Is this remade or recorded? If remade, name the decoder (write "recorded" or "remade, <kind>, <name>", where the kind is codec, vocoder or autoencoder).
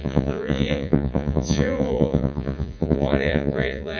remade, vocoder, Vocos